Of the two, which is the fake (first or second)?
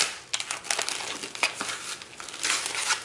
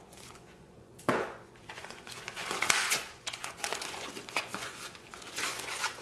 second